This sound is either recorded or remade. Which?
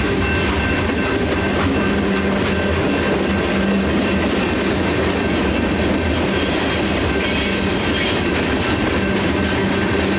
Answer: recorded